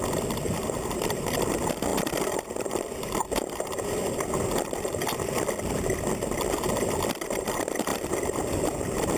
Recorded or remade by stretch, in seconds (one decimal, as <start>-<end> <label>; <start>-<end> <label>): 0.0-9.2 remade